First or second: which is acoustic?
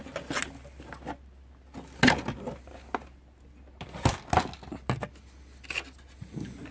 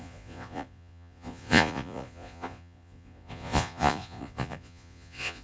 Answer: first